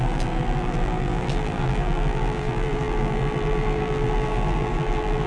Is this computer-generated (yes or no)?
yes